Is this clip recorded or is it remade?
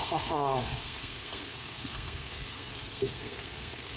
remade